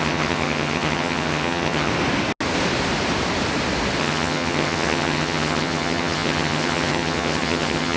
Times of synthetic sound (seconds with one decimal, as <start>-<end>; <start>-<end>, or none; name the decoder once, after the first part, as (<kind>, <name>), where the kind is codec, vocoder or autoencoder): 0.0-1.9 (vocoder, HiFi-GAN); 4.0-8.0